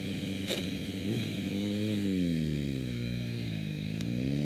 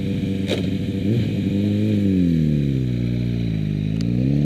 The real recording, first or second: second